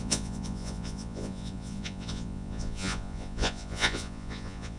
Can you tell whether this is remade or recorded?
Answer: remade